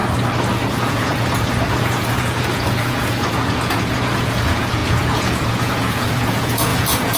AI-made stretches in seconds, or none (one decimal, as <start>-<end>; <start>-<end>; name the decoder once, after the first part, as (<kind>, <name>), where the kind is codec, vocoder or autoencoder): 0.7-7.2 (vocoder, Vocos)